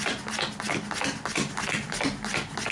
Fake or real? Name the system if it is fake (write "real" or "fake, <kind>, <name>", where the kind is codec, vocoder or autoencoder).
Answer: real